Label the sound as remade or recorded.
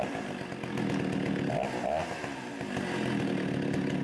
recorded